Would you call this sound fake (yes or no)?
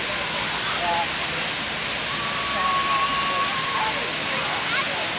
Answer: no